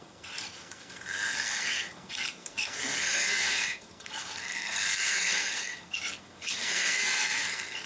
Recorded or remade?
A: remade